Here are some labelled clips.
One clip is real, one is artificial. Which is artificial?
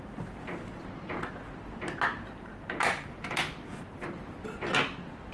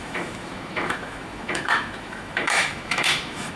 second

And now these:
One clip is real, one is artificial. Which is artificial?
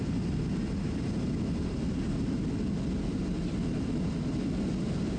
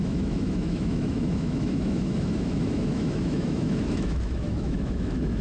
second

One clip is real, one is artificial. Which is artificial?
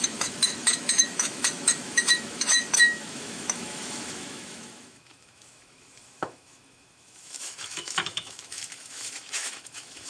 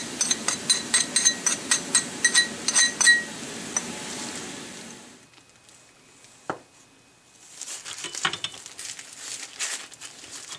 first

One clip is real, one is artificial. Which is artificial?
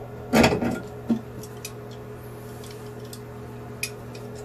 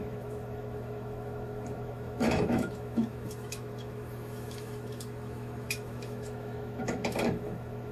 second